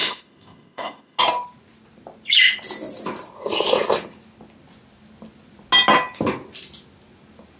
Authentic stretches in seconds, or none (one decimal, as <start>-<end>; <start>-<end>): 1.2-7.6